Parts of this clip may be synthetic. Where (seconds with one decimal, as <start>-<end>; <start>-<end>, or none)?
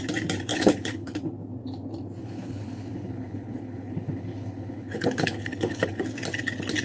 0.5-1.2; 2.2-6.0